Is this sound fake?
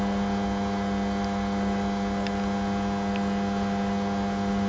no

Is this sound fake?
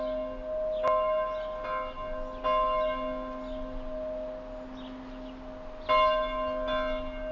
no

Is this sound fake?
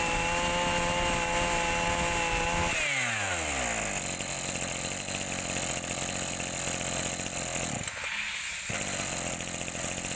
no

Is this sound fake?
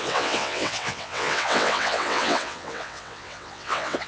yes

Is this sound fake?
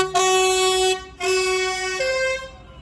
no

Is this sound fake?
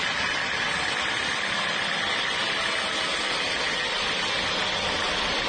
no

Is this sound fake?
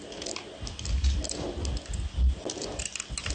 no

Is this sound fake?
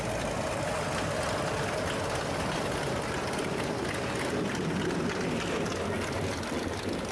no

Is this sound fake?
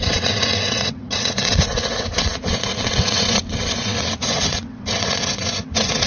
yes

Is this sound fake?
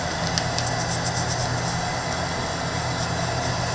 no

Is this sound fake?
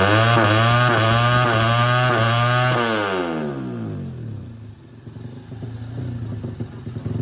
no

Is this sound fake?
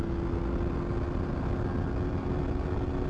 no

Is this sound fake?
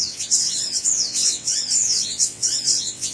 yes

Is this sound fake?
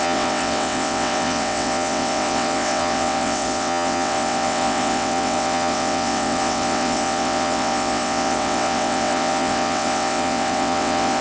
yes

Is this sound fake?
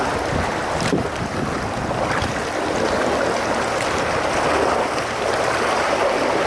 no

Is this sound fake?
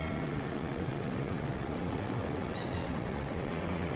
yes